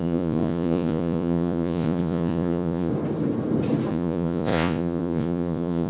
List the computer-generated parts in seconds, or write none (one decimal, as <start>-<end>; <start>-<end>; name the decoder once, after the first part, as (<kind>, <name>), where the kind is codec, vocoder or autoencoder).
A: 0.0-2.9 (vocoder, Vocos); 3.9-5.9